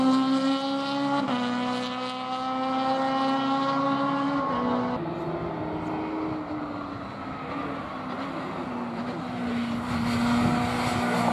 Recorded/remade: recorded